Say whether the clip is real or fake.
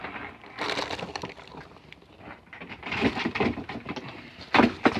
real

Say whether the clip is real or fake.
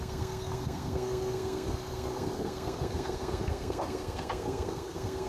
fake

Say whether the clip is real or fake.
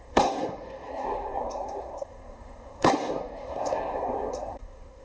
fake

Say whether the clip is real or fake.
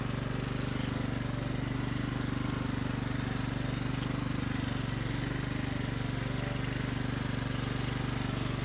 real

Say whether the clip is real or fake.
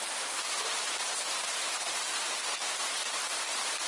real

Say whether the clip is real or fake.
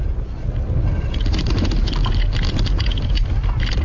real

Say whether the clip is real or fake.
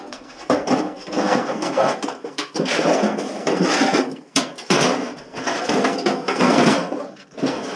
fake